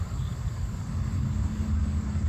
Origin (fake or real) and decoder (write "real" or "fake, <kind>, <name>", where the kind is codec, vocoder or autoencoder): fake, codec, DAC